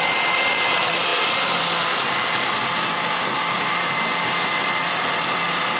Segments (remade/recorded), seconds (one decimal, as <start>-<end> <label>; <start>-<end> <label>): 0.0-5.8 recorded